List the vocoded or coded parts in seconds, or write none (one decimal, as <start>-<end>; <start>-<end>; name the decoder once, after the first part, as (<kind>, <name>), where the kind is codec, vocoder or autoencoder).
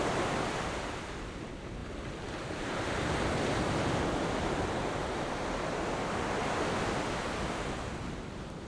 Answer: none